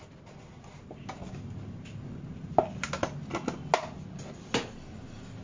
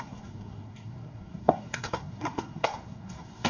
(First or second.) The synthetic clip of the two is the second